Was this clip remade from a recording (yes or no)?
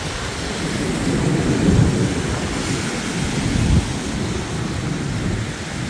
no